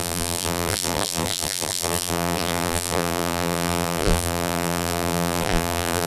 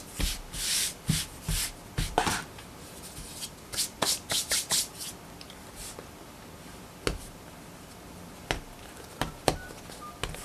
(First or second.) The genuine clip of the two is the second